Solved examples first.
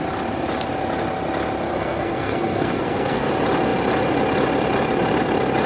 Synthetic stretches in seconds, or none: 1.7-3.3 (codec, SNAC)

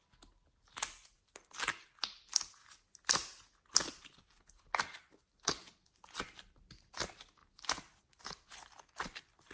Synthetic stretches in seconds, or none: none

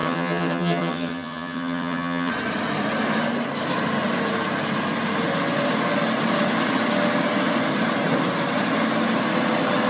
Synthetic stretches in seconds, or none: 0.0-2.3 (vocoder, HiFi-GAN)

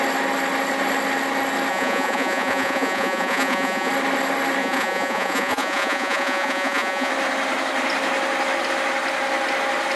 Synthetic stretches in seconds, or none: 1.7-3.9 (vocoder, Vocos); 4.6-7.1